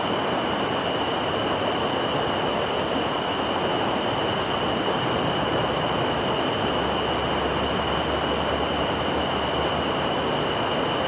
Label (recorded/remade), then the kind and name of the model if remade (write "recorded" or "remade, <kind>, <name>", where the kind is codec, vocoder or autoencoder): recorded